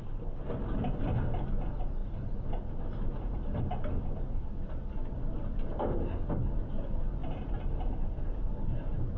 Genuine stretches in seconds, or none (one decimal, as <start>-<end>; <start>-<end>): 0.0-9.2